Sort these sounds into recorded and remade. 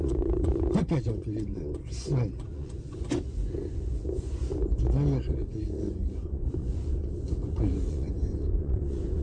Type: remade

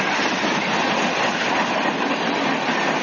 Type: recorded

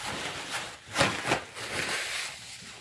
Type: recorded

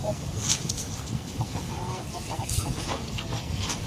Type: remade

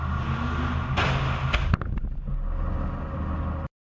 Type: recorded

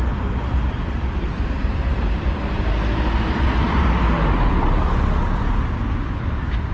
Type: remade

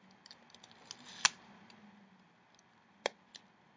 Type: recorded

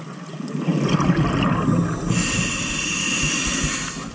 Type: recorded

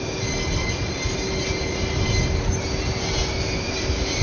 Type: recorded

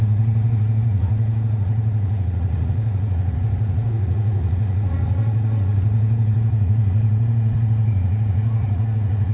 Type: remade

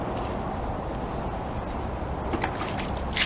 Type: recorded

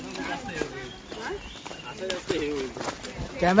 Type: recorded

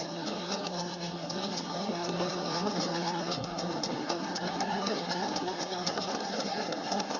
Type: remade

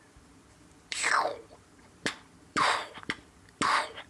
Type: remade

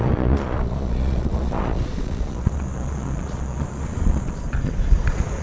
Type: remade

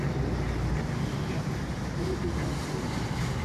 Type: recorded